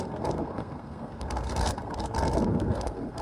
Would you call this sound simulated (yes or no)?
yes